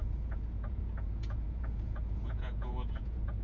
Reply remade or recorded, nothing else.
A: remade